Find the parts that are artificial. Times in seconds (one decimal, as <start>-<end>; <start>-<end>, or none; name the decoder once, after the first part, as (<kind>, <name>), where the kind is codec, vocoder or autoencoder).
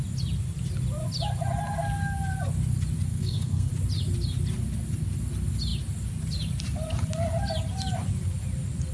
3.1-3.7 (codec, SNAC)